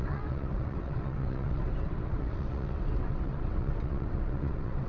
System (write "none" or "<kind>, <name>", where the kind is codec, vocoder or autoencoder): vocoder, WaveNeXt